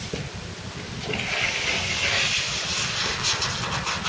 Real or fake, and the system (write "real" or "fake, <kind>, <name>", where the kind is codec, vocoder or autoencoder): real